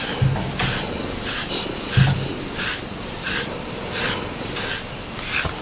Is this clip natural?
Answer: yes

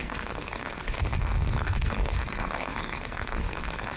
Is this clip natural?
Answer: no